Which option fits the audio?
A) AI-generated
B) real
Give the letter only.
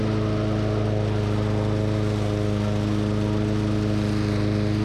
B